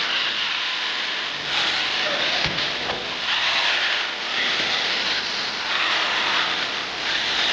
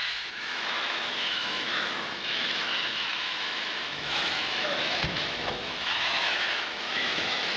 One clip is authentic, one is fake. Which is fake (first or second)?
second